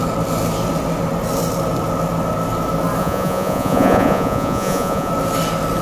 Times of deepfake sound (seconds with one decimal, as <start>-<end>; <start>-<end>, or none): 3.0-5.1